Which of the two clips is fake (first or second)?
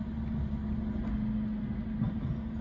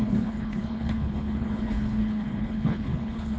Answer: second